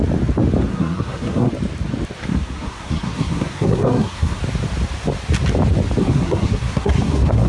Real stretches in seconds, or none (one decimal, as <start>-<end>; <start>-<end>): 0.0-0.7; 1.5-2.3; 4.4-6.0